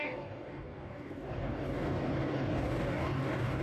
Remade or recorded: remade